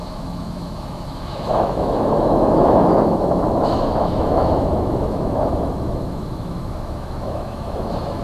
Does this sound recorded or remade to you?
remade